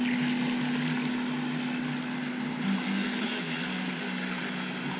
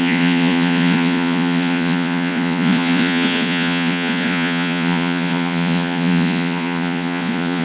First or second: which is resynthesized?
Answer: second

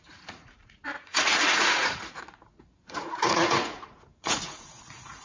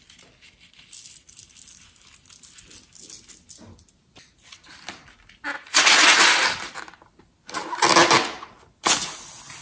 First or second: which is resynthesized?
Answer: first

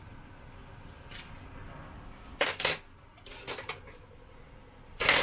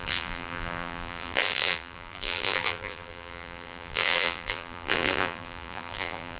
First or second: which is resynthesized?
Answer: second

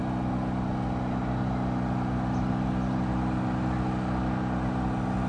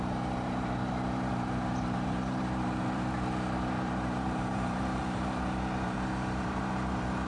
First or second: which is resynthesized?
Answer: second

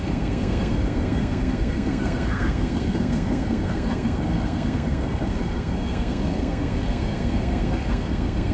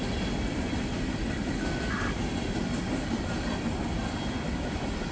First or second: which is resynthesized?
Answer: first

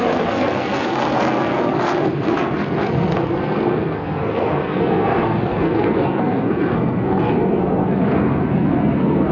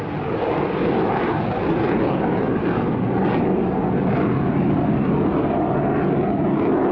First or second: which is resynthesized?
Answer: first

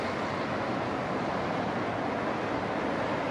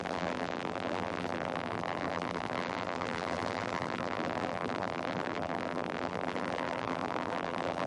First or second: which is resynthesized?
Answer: second